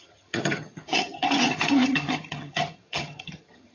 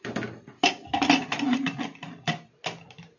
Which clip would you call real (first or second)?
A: second